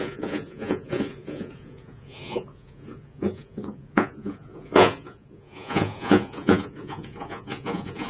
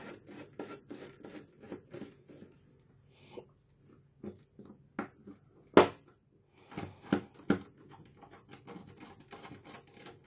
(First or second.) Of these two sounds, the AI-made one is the first